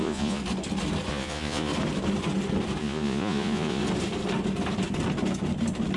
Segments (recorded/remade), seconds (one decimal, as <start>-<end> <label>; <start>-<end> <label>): 0.0-0.4 remade; 0.4-1.1 recorded; 1.1-1.7 remade; 1.7-2.8 recorded; 2.8-3.8 remade; 3.8-6.0 recorded